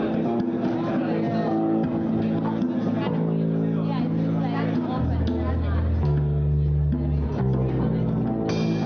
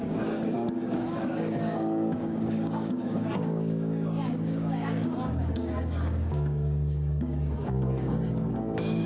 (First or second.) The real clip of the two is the first